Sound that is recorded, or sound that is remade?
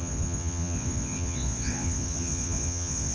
remade